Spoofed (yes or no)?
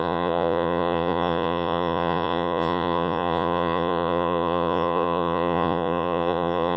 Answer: yes